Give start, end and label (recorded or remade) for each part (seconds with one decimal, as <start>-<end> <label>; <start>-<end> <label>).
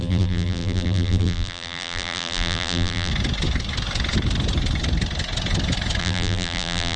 0.0-3.1 remade; 3.1-6.0 recorded; 6.0-7.0 remade